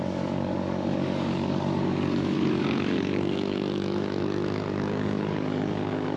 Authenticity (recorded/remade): remade